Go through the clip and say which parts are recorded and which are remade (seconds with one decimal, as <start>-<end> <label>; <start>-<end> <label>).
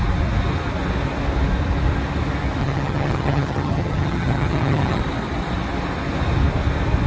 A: 0.0-2.6 recorded; 2.6-5.0 remade; 5.0-7.1 recorded